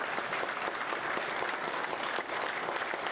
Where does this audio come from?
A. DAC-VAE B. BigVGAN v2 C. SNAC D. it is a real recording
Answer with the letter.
D